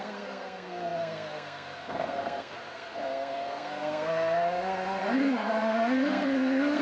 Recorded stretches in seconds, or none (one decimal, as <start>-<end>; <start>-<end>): none